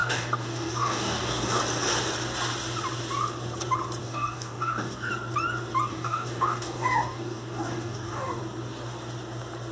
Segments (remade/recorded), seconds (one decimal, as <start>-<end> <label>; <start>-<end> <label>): 0.0-1.6 remade; 1.6-4.0 recorded; 4.0-5.1 remade; 5.1-5.9 recorded; 5.9-8.4 remade; 8.4-9.7 recorded